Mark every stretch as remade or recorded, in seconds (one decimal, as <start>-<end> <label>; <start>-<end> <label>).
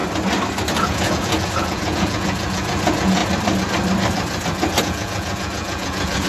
0.0-0.8 recorded; 0.8-3.2 remade; 3.2-4.8 recorded; 4.8-6.3 remade